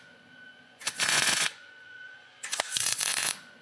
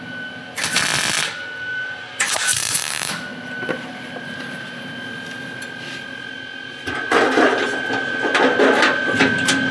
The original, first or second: second